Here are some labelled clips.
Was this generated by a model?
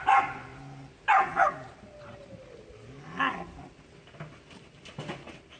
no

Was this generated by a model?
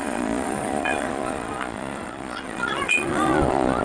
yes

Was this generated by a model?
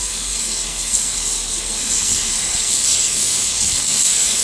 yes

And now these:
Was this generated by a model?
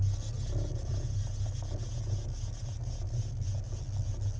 no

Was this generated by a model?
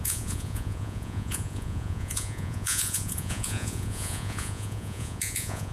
yes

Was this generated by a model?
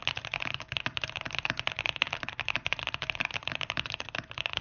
no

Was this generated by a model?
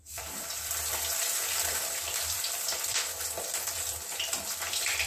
yes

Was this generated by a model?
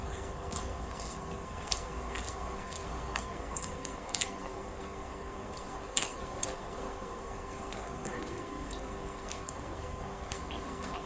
yes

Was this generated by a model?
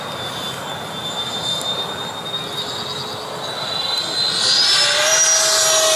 no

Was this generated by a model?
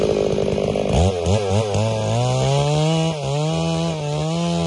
no